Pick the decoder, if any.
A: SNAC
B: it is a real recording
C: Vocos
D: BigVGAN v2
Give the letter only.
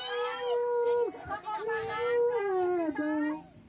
B